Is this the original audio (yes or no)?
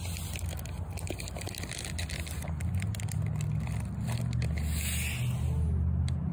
yes